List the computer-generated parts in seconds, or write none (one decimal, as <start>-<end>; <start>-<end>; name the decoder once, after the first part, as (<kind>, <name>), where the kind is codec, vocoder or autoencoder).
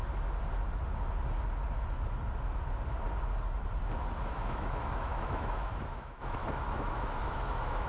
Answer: 4.3-7.9 (autoencoder, DAC-VAE)